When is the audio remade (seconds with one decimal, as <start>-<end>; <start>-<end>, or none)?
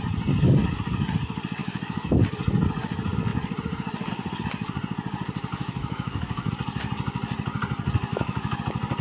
1.6-2.2; 5.5-6.5; 8.1-8.6